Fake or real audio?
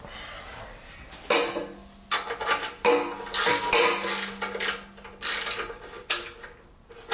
real